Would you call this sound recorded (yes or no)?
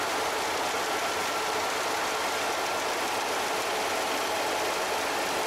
yes